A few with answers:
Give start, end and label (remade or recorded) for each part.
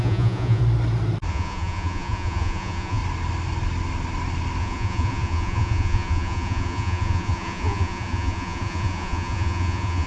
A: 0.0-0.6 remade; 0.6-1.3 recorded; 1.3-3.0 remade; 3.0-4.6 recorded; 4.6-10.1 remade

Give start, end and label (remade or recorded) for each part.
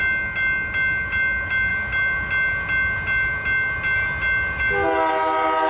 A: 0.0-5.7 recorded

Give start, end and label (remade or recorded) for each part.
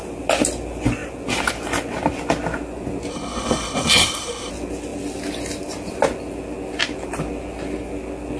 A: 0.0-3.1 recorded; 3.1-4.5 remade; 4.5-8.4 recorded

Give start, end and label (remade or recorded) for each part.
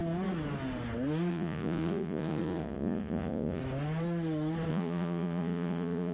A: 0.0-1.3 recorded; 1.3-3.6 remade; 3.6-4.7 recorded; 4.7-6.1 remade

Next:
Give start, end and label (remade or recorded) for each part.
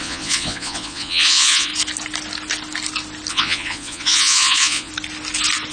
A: 0.0-1.7 remade; 1.7-3.3 recorded; 3.3-4.9 remade; 4.9-5.7 recorded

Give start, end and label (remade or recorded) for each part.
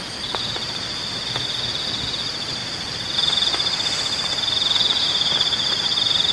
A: 0.0-6.3 recorded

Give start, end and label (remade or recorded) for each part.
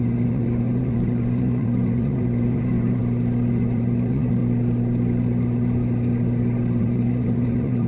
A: 0.0-3.0 remade; 3.0-3.5 recorded; 3.5-4.4 remade; 4.4-6.8 recorded; 6.8-7.9 remade